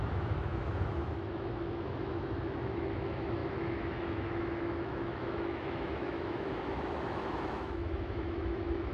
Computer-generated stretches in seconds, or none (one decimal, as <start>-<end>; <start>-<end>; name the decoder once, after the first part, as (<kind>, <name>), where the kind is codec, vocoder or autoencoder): 0.0-8.9 (autoencoder, DAC-VAE)